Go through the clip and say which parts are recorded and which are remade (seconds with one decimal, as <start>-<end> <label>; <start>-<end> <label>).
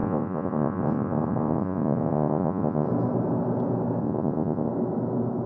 0.0-2.9 remade; 2.9-4.0 recorded; 4.0-4.7 remade; 4.7-5.5 recorded